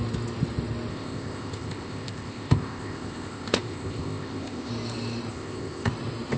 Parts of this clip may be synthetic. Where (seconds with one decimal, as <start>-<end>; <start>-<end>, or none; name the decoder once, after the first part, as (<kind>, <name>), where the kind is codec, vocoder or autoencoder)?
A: 0.9-4.7 (codec, ZipCodec); 5.3-5.9